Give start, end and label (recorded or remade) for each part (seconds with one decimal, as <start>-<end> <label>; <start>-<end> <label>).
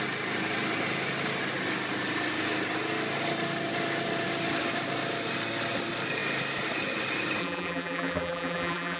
0.0-7.4 recorded; 7.4-9.0 remade